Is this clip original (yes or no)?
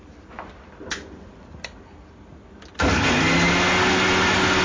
yes